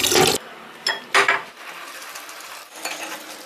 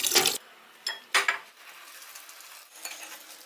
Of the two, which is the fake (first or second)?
first